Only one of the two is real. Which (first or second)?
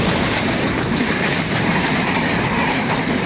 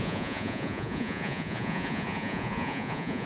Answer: first